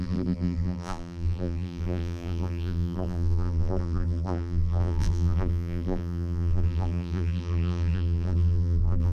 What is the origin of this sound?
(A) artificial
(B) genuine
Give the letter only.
A